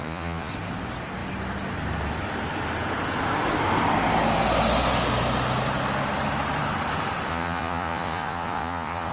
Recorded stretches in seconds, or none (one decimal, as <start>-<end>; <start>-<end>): 0.5-7.3